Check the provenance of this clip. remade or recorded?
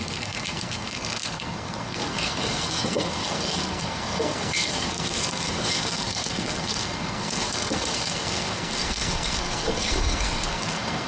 remade